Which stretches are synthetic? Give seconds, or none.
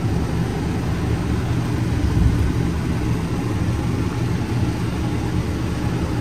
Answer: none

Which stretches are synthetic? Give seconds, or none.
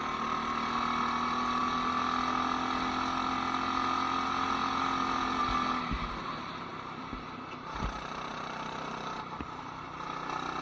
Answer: 6.7-9.8 (vocoder, BigVGAN v2)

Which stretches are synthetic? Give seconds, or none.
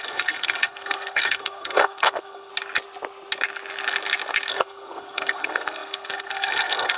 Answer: 0.0-2.5 (codec, SNAC); 4.5-7.0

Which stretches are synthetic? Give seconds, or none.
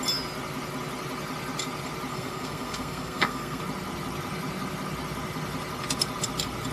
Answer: 2.1-3.6 (codec, SNAC)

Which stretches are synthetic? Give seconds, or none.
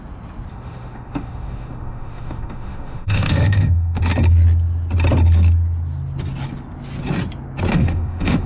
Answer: 0.5-4.0 (autoencoder, DAC-VAE); 7.7-8.5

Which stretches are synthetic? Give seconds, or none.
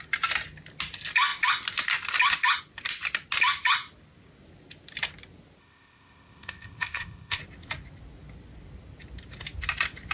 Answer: 5.6-7.4 (codec, ZipCodec)